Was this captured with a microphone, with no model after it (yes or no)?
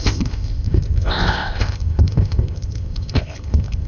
no